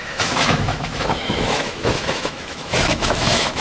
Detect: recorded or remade remade